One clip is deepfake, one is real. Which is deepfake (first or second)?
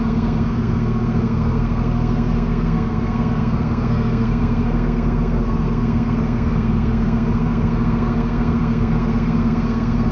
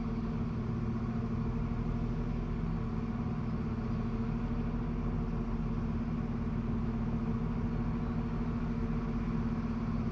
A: first